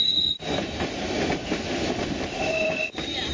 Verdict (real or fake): fake